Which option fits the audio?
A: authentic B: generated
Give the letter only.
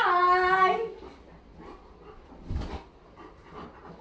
A